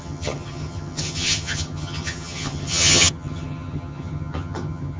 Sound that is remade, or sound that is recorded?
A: remade